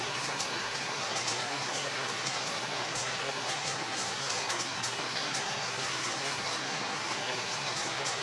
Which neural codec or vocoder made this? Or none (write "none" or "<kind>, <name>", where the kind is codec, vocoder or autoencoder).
codec, SNAC